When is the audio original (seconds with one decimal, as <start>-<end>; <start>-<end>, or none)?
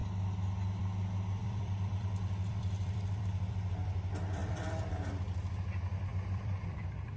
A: 0.0-1.4; 3.7-4.4; 5.2-6.1